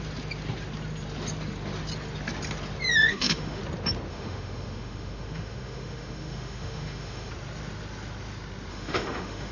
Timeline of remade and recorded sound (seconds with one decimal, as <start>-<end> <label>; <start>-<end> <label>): 0.0-3.1 recorded; 3.1-3.6 remade; 3.6-4.1 recorded; 4.1-7.3 remade; 7.3-8.7 recorded; 8.7-9.5 remade